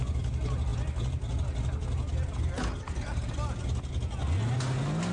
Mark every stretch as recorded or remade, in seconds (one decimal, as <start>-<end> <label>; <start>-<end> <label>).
0.0-5.1 recorded